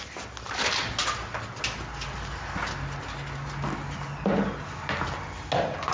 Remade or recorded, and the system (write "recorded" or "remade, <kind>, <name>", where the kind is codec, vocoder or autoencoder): recorded